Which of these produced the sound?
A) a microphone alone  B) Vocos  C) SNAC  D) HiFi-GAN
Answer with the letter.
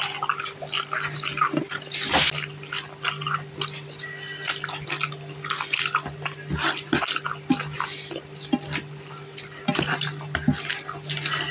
A